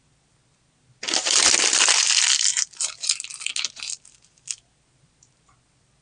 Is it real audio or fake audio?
real